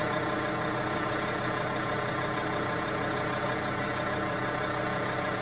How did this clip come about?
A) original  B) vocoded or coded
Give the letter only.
A